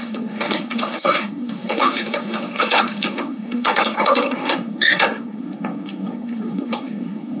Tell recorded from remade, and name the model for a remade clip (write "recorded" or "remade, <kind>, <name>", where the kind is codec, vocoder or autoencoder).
remade, codec, SNAC